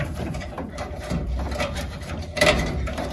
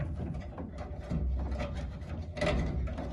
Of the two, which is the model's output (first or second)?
first